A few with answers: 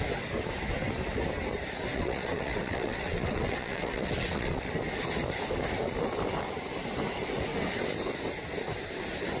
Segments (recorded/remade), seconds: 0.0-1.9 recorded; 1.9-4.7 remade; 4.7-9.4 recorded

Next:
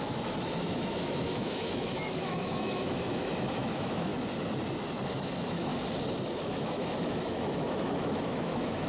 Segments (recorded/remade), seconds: 0.0-4.1 remade; 4.1-5.1 recorded; 5.1-5.7 remade; 5.7-6.4 recorded; 6.4-8.9 remade

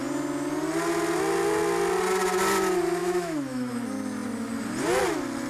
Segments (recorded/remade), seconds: 0.0-3.0 recorded; 3.0-3.7 remade; 3.7-5.5 recorded

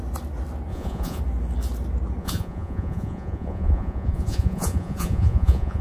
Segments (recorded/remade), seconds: 0.0-0.7 recorded; 0.7-1.2 remade; 1.2-2.2 recorded; 2.2-5.8 remade

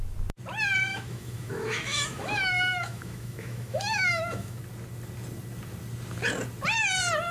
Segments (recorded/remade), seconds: 0.0-0.9 recorded; 0.9-4.6 remade; 4.6-7.3 recorded